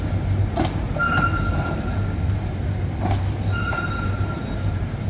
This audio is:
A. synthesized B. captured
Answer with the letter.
B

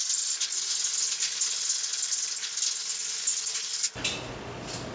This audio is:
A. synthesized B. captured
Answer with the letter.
B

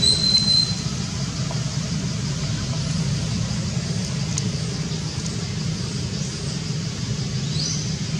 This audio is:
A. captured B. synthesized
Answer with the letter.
A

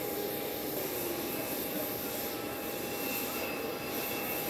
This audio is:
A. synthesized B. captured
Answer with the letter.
B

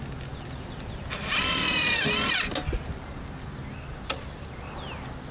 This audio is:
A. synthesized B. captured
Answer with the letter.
B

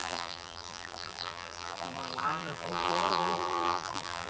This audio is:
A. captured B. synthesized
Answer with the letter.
B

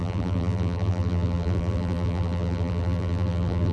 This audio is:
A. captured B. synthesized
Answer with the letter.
B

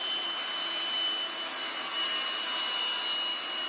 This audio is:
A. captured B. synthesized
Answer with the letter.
A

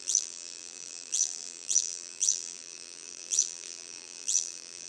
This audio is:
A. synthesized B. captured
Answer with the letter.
A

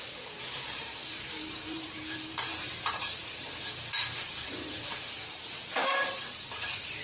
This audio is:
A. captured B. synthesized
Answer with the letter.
B